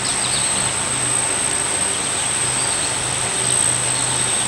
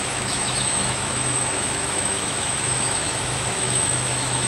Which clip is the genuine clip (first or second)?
first